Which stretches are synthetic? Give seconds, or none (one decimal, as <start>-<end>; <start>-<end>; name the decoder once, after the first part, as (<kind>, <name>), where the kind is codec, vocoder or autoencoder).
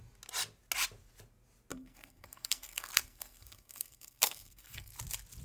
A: 1.7-4.9 (codec, SNAC)